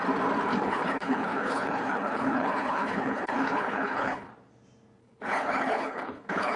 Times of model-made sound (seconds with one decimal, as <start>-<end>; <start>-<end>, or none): 0.5-4.3; 5.0-6.6